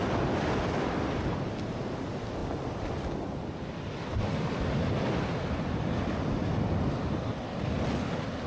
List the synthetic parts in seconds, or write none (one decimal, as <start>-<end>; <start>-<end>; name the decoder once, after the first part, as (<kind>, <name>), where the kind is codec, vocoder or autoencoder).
none